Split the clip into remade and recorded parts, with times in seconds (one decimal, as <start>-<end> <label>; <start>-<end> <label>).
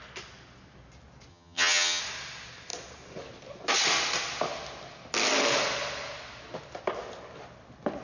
0.0-1.3 recorded; 1.3-2.0 remade; 2.0-8.0 recorded